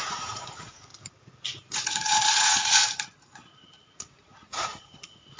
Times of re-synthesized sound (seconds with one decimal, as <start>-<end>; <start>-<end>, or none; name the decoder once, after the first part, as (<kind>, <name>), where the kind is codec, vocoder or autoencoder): 0.0-0.9 (vocoder, Vocos); 1.7-2.8; 4.0-5.4